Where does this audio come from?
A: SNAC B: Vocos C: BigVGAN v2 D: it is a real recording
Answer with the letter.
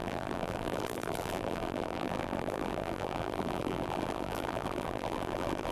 C